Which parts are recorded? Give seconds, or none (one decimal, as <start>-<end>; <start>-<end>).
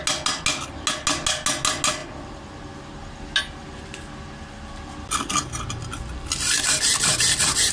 0.0-7.7